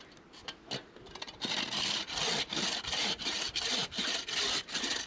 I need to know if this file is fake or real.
real